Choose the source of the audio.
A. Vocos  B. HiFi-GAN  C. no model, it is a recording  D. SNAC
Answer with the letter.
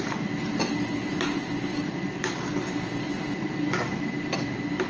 C